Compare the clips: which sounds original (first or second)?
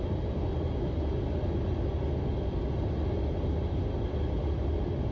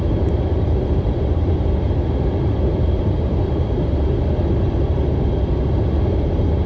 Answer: first